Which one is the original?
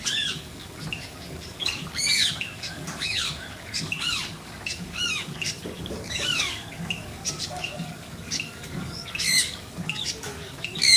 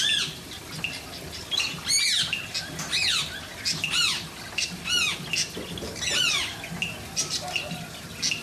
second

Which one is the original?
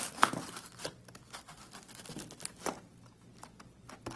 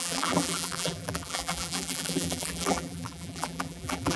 first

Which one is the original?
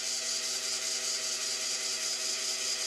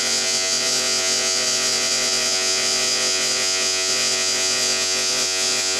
first